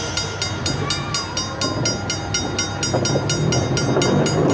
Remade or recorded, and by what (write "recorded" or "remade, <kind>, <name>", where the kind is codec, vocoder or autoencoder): recorded